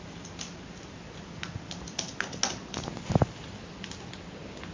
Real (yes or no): yes